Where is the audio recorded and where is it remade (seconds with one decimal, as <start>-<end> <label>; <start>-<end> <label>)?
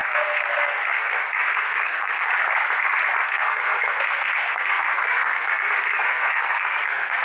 0.0-2.3 remade; 2.3-3.2 recorded; 3.2-7.2 remade